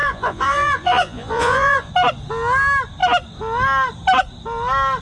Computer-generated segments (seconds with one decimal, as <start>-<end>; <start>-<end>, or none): 0.0-1.9